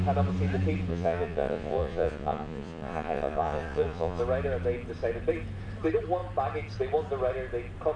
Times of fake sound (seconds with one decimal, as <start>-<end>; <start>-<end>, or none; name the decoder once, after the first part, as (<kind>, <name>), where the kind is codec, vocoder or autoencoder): 0.9-4.2 (vocoder, Vocos)